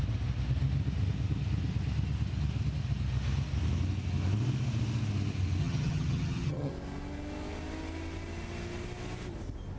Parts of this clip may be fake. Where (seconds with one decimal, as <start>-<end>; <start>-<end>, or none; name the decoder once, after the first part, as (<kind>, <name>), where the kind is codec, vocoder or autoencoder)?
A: 5.6-6.7 (vocoder, HiFi-GAN)